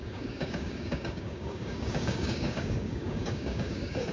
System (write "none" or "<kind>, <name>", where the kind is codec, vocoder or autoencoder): codec, DAC